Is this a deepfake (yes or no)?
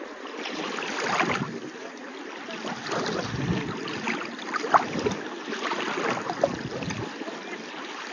no